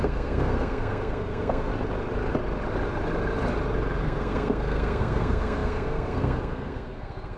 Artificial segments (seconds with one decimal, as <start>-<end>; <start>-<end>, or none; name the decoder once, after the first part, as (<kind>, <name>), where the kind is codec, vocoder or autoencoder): 0.0-1.7 (codec, SNAC); 4.0-7.4